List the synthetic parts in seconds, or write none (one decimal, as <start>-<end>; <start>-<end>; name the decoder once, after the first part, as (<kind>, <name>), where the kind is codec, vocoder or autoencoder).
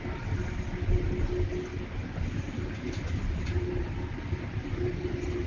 none